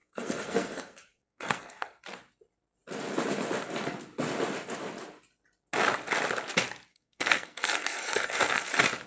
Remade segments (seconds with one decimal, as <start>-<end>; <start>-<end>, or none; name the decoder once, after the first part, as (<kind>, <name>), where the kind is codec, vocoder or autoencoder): 0.0-2.0 (codec, SNAC); 6.9-8.7